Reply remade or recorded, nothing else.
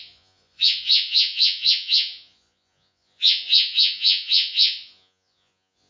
remade